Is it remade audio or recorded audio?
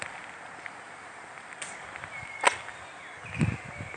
recorded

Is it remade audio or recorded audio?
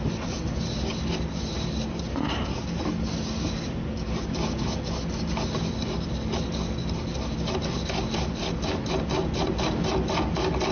recorded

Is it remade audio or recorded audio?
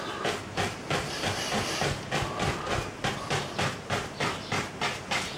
recorded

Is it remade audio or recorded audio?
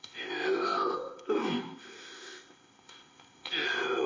remade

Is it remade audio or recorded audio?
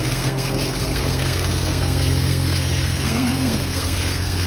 remade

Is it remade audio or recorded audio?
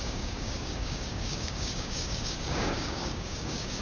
remade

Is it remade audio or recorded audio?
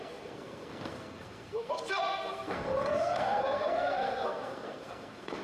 remade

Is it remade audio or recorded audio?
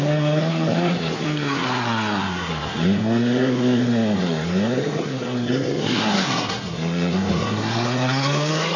remade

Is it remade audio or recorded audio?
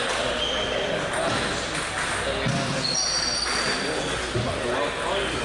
recorded